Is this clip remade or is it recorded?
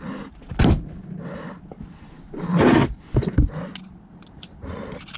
recorded